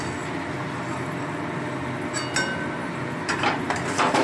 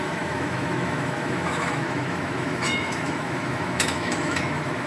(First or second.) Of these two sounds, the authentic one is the first